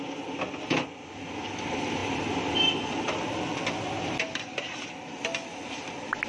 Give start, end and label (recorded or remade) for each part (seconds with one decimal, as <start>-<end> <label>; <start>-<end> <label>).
0.0-6.3 recorded